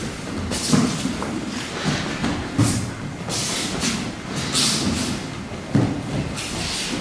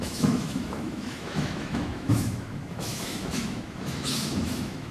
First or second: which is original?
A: first